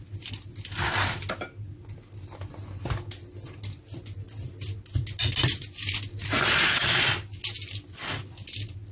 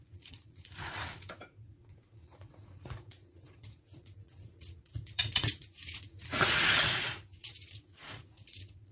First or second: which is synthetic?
second